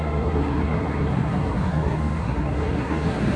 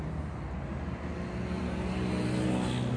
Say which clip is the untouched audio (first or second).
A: second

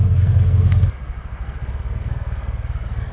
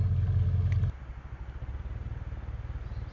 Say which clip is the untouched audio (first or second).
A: second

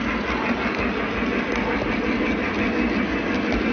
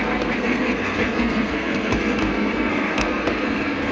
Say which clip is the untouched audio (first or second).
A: first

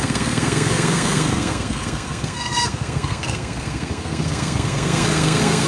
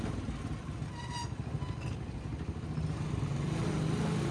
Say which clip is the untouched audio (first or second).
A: second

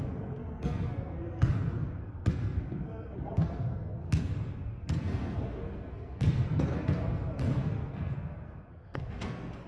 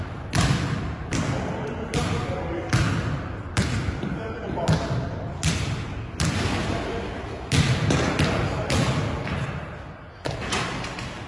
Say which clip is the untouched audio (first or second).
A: second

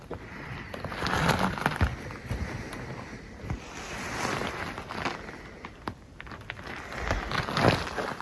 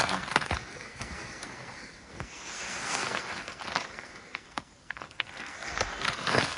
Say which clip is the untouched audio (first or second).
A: first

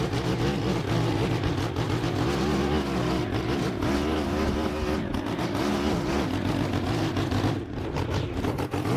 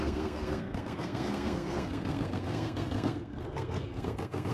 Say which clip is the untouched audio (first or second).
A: first